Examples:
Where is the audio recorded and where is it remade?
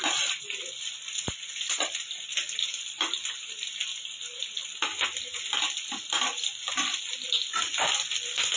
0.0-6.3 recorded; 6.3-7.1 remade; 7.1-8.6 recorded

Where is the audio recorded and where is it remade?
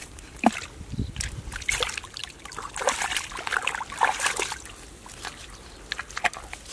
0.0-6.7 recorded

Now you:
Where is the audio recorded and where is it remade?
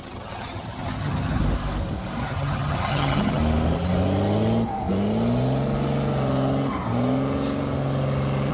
0.0-1.4 remade; 1.4-2.2 recorded; 2.2-3.4 remade; 3.4-8.5 recorded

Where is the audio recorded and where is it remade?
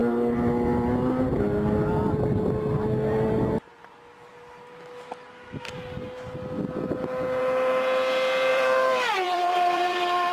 0.0-8.5 recorded; 8.5-10.3 remade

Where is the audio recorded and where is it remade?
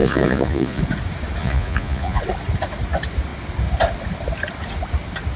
0.0-0.8 remade; 0.8-1.4 recorded; 1.4-2.2 remade; 2.2-5.4 recorded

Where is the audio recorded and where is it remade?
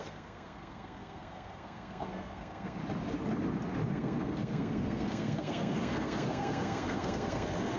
0.0-2.8 remade; 2.8-3.9 recorded; 3.9-7.8 remade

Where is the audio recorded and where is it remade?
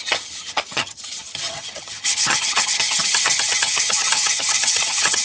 0.0-5.2 remade